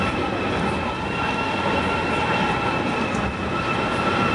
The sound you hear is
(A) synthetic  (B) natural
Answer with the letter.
B